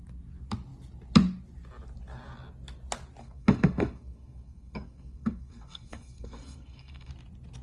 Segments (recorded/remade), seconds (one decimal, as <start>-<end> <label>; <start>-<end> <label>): 0.0-3.2 recorded; 3.2-7.1 remade; 7.1-7.6 recorded